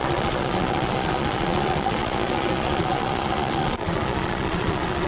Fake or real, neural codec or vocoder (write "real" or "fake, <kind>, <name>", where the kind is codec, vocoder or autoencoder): fake, vocoder, Vocos